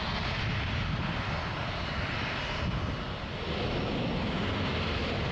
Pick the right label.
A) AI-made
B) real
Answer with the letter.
B